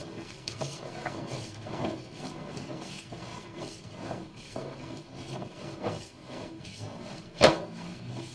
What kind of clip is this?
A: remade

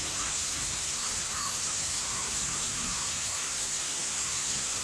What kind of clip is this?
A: remade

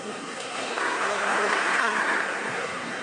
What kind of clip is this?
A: remade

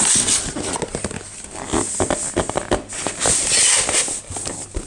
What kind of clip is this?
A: recorded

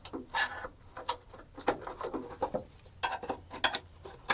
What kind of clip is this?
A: recorded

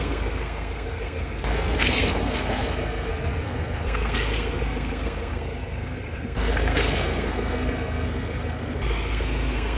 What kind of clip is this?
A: remade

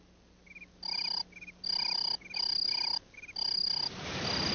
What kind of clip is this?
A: recorded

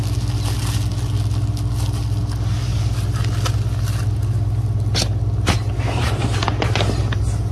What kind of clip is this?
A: recorded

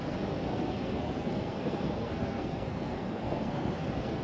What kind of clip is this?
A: remade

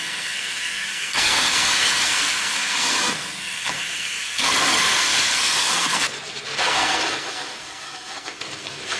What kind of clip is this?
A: remade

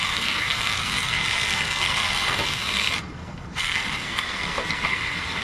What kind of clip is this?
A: remade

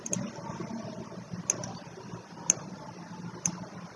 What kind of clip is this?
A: recorded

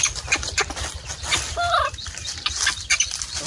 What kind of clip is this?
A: recorded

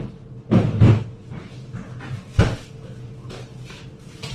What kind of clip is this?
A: recorded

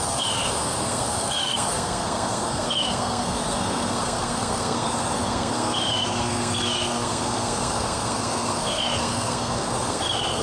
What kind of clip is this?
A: remade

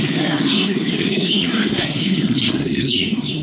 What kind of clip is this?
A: remade